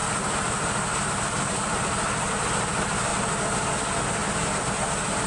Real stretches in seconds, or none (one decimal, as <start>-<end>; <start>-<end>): 0.0-5.3